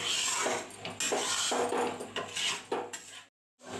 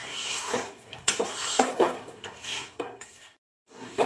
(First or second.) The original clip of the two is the first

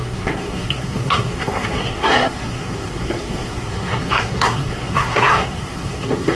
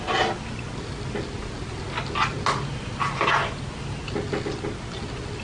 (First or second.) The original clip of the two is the second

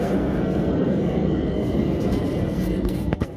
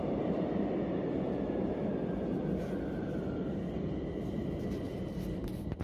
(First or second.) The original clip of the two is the second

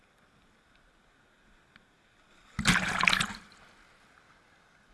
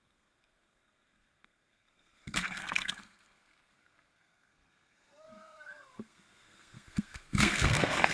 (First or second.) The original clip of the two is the first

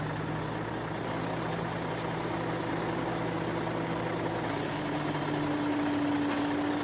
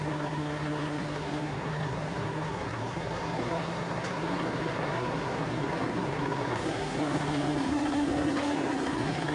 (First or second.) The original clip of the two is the first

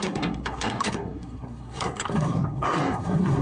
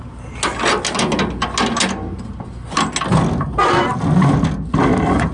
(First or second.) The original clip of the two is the second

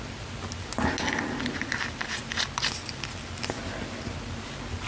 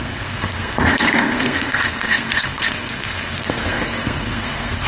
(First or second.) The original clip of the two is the first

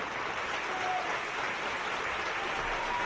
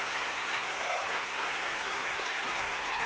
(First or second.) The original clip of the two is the first